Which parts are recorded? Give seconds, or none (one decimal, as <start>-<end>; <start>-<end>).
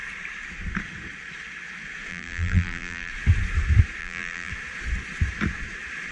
0.0-2.1; 3.1-4.0; 4.5-6.1